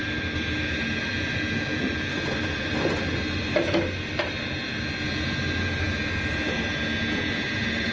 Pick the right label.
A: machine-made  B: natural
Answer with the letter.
B